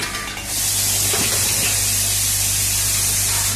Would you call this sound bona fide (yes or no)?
yes